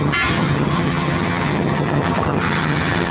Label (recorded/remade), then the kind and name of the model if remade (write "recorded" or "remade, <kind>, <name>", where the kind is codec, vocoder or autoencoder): remade, vocoder, HiFi-GAN